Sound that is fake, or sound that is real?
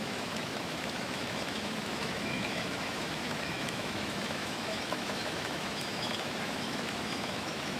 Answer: fake